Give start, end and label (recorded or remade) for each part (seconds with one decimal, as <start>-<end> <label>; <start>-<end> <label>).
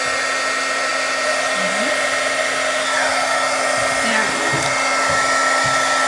0.0-6.1 recorded